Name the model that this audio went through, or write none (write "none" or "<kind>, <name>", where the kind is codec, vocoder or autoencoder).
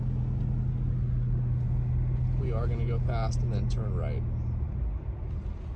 none